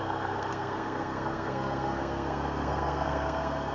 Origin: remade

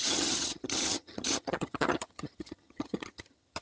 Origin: remade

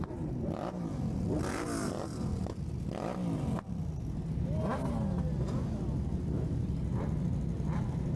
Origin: recorded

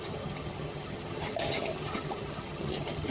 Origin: remade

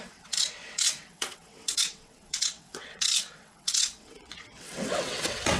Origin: remade